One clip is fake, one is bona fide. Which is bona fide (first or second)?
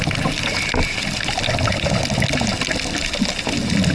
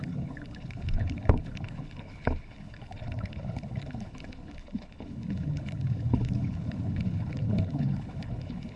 first